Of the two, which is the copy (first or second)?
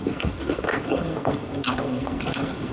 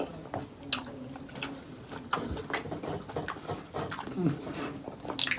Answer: first